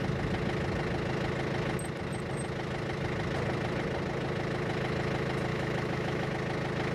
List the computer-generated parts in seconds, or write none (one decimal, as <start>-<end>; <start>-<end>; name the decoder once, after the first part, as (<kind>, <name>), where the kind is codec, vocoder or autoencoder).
5.5-6.3 (autoencoder, DAC-VAE)